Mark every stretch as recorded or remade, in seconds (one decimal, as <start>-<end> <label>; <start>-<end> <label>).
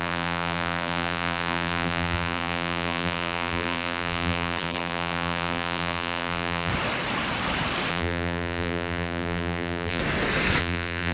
0.0-6.7 remade; 6.7-7.9 recorded; 7.9-10.0 remade; 10.0-10.6 recorded; 10.6-11.1 remade